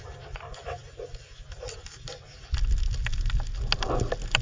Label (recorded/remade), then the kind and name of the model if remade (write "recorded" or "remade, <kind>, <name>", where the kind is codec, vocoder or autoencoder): recorded